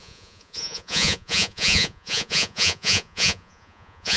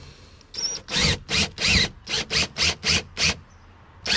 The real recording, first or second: second